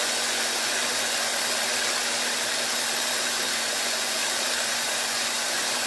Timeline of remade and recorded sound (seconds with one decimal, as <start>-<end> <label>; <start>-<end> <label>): 0.0-1.3 remade; 1.3-3.3 recorded; 3.3-4.2 remade; 4.2-4.7 recorded; 4.7-5.9 remade